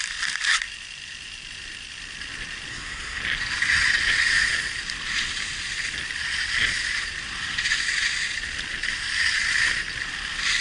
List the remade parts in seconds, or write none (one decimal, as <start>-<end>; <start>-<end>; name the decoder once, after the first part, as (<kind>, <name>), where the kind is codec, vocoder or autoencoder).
2.7-3.2 (codec, SNAC)